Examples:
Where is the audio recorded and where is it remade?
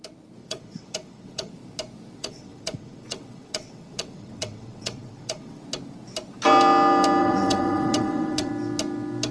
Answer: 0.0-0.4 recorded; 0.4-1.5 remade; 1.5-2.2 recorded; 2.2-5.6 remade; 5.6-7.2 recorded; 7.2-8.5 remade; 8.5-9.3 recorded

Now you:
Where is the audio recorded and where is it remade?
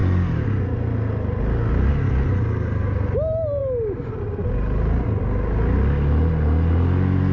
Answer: 0.0-7.3 recorded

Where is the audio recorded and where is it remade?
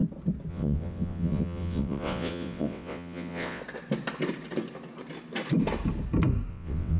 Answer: 0.0-0.5 recorded; 0.5-3.6 remade; 3.6-6.5 recorded; 6.5-7.0 remade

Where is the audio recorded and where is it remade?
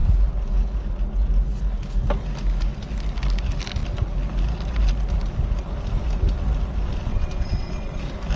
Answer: 0.0-7.1 recorded; 7.1-8.0 remade; 8.0-8.4 recorded